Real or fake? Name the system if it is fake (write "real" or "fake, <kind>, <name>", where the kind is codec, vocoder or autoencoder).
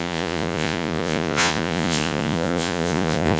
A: fake, vocoder, Vocos